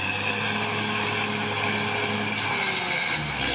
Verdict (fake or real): real